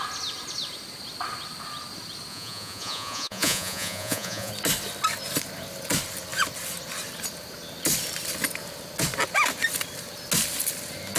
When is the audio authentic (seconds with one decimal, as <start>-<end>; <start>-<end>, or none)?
0.0-2.3; 4.5-11.2

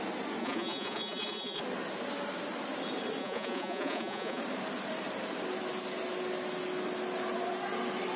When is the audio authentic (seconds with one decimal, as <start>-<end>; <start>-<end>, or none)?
0.0-0.4; 1.6-3.2; 4.4-8.2

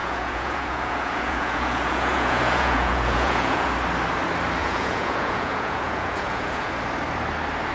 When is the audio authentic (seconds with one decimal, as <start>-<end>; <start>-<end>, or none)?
3.7-4.6; 6.7-7.7

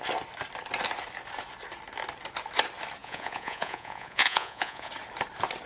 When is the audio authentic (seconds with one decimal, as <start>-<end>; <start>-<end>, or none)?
0.0-3.0; 4.9-5.7

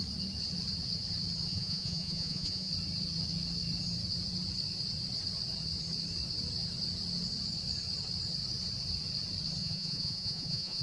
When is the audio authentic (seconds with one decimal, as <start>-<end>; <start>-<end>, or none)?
0.0-1.5; 2.7-9.6